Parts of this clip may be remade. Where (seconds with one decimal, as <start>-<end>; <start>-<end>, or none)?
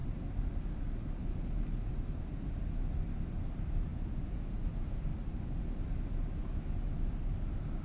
3.9-4.4